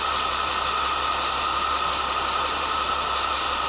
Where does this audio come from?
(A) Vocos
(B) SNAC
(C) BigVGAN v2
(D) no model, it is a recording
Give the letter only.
C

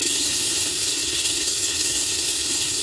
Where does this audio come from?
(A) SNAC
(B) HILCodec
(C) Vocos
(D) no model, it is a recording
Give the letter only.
A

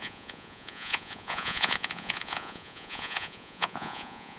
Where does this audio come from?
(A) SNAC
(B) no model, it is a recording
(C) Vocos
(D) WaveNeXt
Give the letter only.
C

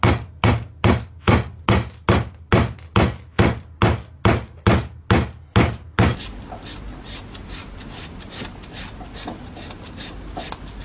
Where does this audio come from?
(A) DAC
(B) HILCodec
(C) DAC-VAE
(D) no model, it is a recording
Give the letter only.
D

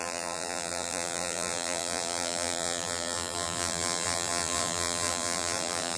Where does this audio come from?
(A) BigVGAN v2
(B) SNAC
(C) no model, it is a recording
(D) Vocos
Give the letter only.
A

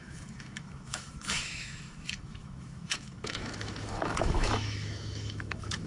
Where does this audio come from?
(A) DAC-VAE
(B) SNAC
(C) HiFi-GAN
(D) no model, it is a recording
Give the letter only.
A